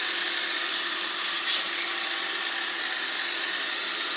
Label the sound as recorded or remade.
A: recorded